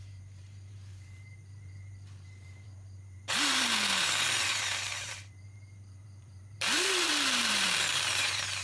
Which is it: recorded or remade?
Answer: remade